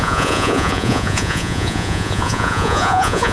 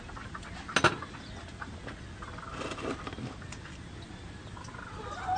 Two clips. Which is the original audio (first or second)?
second